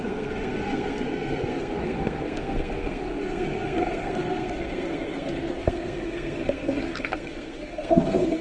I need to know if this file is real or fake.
fake